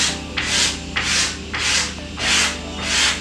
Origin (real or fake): real